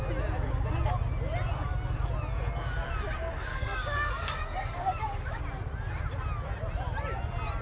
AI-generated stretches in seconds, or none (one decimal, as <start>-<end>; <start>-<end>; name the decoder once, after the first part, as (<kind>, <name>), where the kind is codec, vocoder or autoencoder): 3.5-5.4 (codec, DAC)